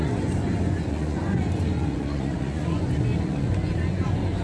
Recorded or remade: remade